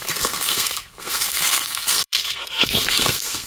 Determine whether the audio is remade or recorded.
remade